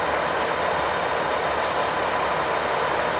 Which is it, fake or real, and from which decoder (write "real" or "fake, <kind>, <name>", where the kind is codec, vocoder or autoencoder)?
real